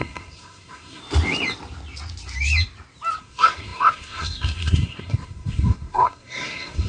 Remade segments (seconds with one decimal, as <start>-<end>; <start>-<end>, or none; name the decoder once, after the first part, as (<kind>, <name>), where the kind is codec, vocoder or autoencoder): 0.0-1.0 (codec, SNAC); 3.2-6.9